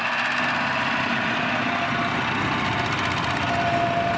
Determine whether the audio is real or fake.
real